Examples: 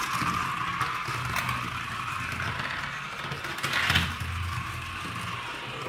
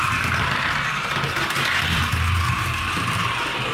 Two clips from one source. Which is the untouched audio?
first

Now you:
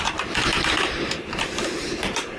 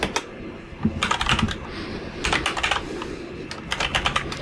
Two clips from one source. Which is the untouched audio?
second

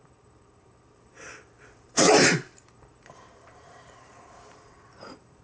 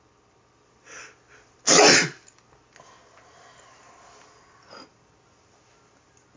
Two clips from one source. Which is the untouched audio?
second